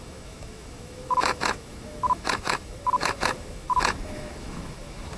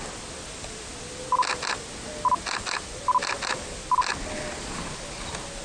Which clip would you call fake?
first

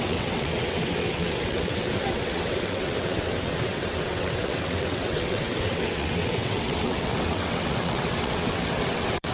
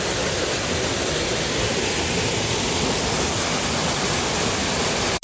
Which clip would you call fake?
first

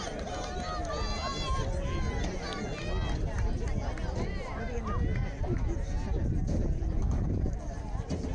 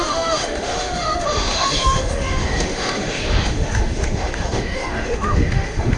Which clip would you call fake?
second